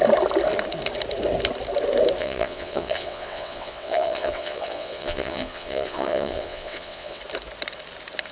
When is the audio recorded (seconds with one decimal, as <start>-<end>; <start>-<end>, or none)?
0.0-2.2; 7.2-8.3